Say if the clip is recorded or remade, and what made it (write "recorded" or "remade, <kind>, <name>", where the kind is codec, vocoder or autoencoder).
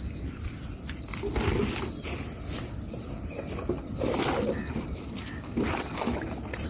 recorded